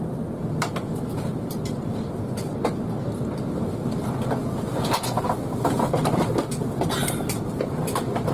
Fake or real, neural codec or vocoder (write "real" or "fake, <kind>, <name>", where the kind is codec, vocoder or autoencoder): real